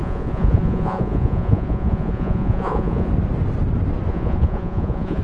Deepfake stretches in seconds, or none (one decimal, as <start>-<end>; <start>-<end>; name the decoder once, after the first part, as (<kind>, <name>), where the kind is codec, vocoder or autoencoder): 0.0-3.1 (vocoder, Vocos); 4.1-5.2